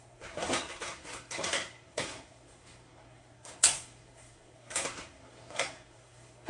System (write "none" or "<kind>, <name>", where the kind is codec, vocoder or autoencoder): codec, SNAC